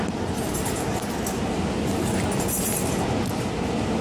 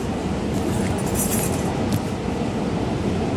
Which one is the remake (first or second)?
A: second